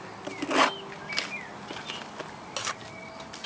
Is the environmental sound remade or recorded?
recorded